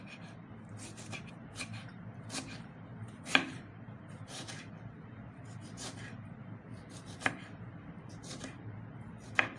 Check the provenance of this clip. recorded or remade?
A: remade